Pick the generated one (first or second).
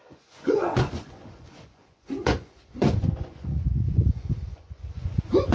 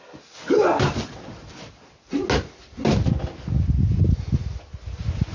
first